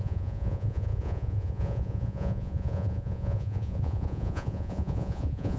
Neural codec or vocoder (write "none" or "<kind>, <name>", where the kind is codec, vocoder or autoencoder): vocoder, Vocos